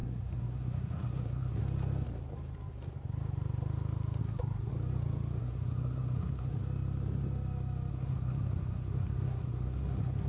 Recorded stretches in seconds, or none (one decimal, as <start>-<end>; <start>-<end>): 1.6-4.2; 4.7-5.4; 6.6-7.9

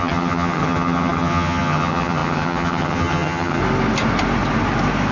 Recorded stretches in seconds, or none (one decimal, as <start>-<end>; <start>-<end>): 3.6-5.1